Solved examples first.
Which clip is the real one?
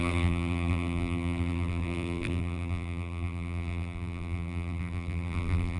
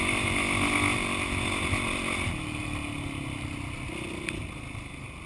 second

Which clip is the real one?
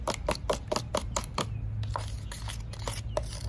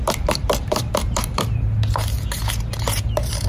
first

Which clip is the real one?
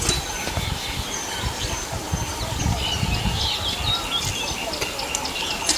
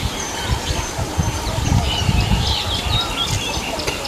first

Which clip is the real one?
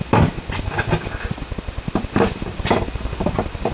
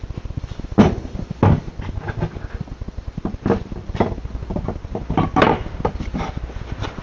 second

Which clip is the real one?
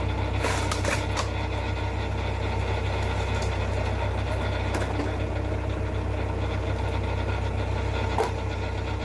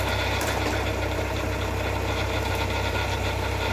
first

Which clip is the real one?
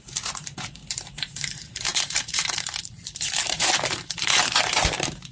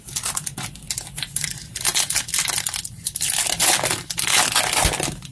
second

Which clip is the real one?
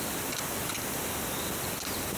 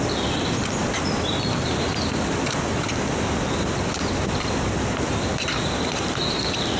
first